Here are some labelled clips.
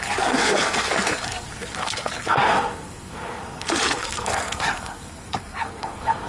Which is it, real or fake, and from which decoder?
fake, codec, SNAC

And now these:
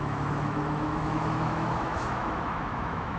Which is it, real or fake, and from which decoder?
fake, autoencoder, DAC-VAE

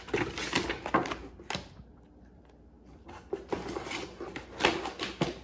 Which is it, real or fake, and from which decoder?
real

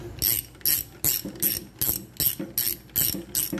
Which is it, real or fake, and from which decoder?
real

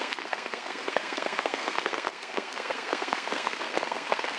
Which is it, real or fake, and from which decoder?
fake, codec, SNAC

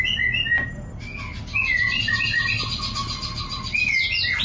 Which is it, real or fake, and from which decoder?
real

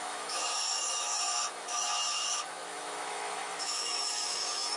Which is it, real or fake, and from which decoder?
fake, autoencoder, DAC-VAE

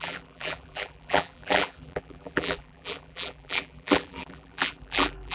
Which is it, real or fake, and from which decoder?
fake, vocoder, BigVGAN v2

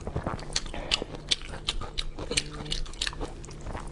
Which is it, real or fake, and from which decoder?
real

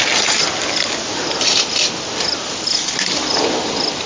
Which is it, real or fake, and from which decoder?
real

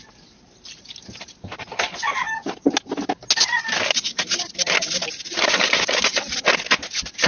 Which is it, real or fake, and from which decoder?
real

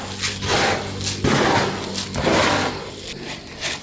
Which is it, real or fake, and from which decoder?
real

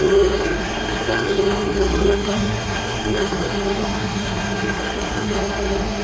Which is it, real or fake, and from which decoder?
fake, codec, SNAC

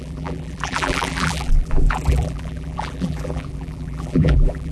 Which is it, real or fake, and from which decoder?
fake, vocoder, BigVGAN v2